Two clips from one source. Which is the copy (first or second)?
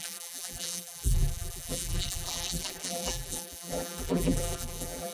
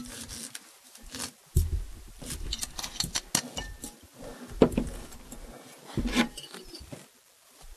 first